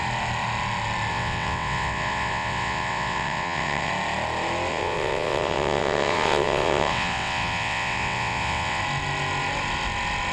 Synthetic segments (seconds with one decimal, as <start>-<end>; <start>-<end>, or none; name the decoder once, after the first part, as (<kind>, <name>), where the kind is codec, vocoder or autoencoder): 1.1-3.9 (vocoder, WaveNeXt); 4.7-8.8